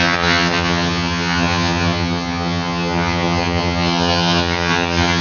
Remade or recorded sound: remade